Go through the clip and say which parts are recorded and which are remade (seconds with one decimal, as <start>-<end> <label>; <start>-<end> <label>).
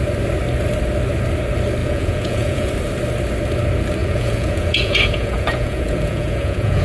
0.0-1.8 recorded; 1.8-2.7 remade; 2.7-4.0 recorded; 4.0-6.8 remade